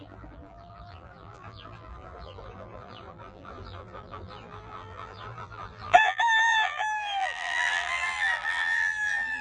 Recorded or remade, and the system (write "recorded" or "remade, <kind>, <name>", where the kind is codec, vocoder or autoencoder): remade, vocoder, BigVGAN v2